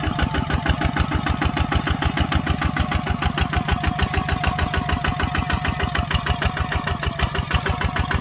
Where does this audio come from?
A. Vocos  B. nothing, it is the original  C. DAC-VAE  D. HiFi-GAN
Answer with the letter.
B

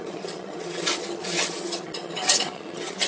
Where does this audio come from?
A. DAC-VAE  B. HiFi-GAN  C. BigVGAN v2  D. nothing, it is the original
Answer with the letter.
B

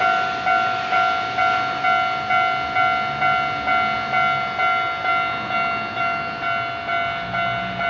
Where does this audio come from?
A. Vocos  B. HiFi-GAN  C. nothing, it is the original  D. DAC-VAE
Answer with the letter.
C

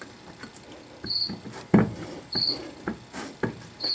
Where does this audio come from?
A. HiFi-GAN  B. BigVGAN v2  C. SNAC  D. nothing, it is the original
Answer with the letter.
D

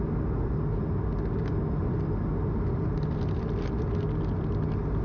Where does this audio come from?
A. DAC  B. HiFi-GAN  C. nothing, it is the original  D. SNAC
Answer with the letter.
C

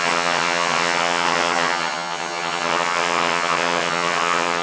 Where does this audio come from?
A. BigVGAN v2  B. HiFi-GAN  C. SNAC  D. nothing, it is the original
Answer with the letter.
B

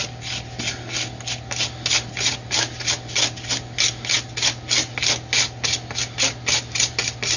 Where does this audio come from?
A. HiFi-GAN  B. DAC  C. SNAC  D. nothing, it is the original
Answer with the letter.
D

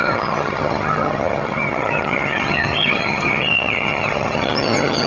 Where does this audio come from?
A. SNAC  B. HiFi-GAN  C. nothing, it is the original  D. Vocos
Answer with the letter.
B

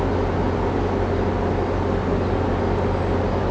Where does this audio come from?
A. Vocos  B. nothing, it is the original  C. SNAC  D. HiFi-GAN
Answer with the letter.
B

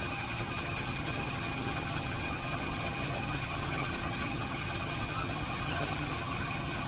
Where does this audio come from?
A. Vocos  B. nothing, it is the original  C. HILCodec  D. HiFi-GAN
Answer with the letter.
D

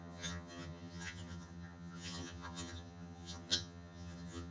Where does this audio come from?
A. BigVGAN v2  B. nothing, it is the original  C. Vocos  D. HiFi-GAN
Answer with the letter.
D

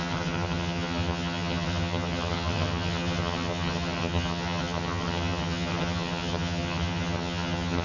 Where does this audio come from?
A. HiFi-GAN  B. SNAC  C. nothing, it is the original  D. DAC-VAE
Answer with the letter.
A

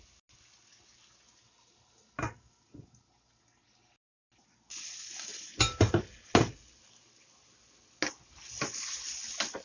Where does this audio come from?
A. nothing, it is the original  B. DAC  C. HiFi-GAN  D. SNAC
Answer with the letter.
A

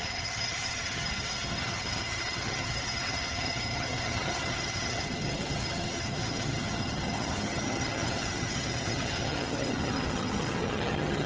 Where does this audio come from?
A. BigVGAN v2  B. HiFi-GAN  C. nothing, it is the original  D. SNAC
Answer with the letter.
B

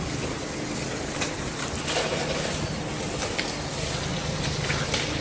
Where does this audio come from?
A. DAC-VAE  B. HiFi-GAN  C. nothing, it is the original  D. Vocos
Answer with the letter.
C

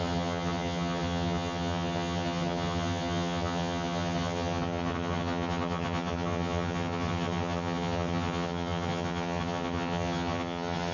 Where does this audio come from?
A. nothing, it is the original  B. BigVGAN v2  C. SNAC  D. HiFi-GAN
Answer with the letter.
D